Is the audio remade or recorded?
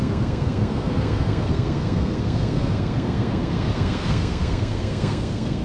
remade